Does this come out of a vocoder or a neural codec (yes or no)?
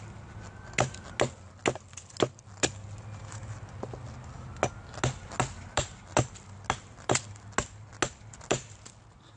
no